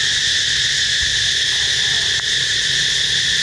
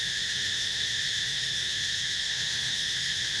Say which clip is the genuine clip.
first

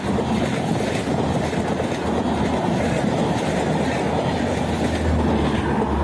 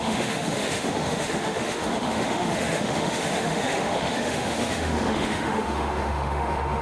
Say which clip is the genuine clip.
first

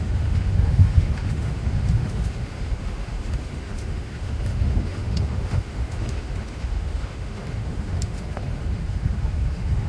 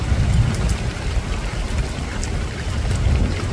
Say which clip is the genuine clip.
second